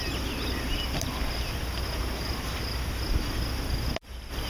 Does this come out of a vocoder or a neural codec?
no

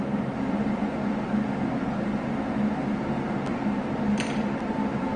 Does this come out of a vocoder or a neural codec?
no